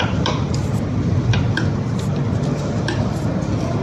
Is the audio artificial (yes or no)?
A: no